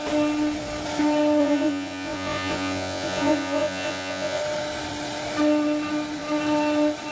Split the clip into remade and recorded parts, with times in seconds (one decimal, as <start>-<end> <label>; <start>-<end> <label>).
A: 0.0-1.4 recorded; 1.4-4.4 remade; 4.4-7.1 recorded